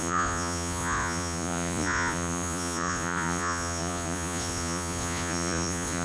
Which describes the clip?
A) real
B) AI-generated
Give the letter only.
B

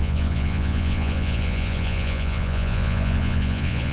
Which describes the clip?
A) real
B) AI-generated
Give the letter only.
B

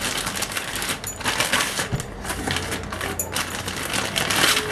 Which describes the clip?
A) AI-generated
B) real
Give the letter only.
B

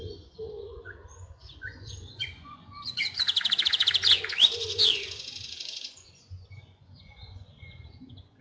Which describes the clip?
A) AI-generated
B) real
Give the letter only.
A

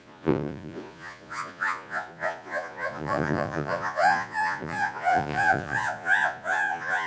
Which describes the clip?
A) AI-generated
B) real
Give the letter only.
A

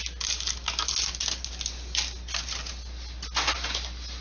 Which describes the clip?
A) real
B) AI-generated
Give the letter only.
A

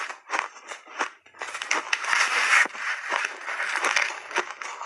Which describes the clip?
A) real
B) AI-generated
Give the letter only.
A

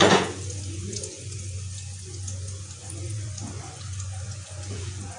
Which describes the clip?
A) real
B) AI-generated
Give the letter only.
B